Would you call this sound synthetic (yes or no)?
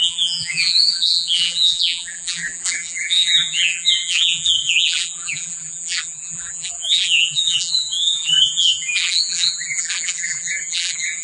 yes